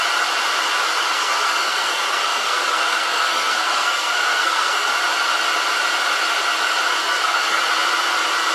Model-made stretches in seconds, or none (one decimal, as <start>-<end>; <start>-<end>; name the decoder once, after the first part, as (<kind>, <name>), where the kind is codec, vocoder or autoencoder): 0.9-4.9 (codec, SNAC); 7.0-7.6